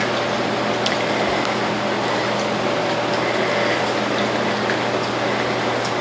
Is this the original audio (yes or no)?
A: yes